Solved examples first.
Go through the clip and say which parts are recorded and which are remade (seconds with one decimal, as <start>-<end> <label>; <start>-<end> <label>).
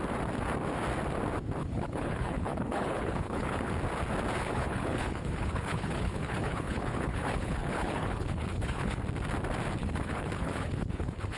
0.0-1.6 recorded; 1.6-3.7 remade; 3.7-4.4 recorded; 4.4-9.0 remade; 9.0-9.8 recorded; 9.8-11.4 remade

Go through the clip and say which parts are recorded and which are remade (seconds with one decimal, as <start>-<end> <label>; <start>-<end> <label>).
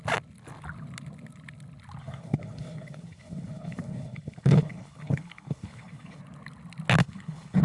0.0-2.0 recorded; 2.0-6.2 remade; 6.2-7.0 recorded; 7.0-7.6 remade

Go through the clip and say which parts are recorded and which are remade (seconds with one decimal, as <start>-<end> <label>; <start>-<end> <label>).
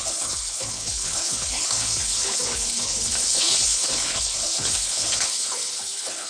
0.0-6.3 remade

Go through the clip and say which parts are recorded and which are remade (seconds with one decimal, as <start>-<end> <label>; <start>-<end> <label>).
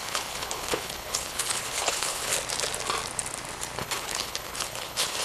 0.0-2.3 remade; 2.3-3.8 recorded; 3.8-5.2 remade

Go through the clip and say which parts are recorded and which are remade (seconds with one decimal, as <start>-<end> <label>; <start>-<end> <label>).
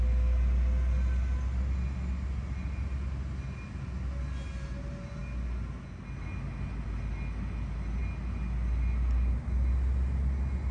0.0-10.7 recorded